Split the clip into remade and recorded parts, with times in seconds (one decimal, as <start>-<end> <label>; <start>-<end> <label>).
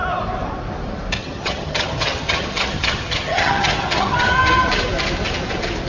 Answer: 0.0-1.2 recorded; 1.2-4.7 remade; 4.7-5.9 recorded